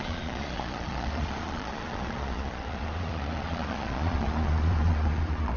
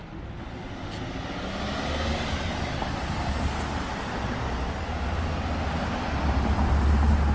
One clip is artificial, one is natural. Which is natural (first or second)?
second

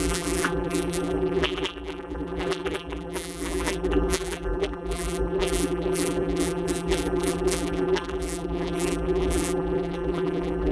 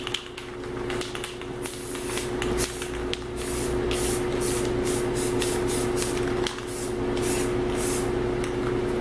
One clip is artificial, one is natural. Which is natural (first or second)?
second